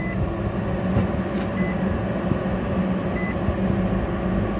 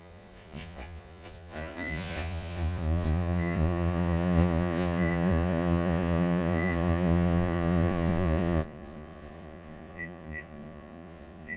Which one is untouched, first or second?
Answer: first